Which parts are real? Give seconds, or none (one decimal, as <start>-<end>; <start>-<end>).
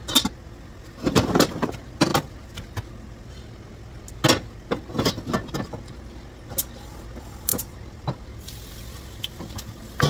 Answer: 0.0-7.5; 8.9-10.1